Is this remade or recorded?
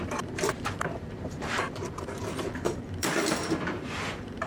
remade